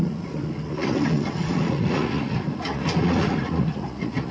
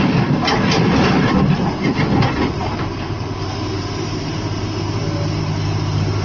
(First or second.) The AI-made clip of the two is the first